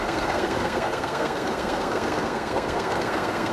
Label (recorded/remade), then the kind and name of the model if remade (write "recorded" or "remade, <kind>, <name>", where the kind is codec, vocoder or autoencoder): remade, codec, SNAC